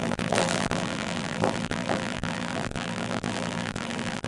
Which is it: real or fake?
fake